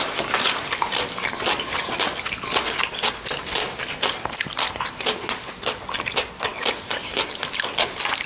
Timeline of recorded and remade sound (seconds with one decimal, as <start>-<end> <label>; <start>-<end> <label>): 0.0-8.3 recorded